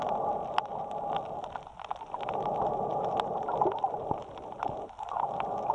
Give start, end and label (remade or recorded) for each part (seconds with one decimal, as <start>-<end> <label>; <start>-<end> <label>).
0.0-2.9 recorded; 2.9-4.0 remade; 4.0-5.7 recorded